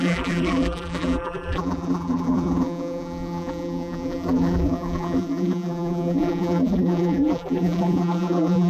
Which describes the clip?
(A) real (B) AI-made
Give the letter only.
B